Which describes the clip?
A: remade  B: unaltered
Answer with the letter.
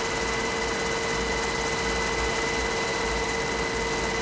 B